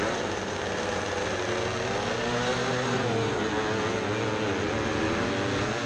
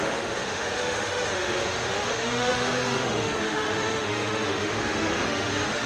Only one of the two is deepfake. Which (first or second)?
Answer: second